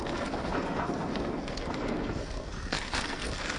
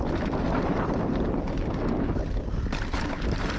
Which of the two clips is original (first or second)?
second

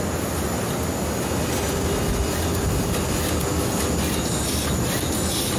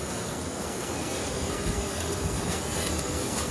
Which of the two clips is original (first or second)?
first